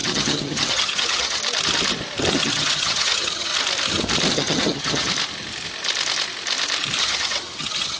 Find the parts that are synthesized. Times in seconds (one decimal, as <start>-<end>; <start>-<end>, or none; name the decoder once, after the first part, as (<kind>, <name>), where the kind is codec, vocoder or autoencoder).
0.0-1.4 (vocoder, HiFi-GAN); 2.3-3.5; 4.3-5.1; 7.0-8.0